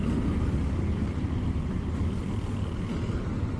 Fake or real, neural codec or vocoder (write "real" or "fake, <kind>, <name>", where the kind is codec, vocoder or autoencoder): real